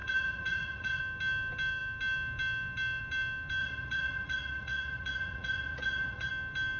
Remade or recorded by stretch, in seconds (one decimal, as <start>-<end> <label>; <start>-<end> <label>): 0.0-1.0 remade; 1.0-3.6 recorded; 3.6-6.3 remade; 6.3-6.8 recorded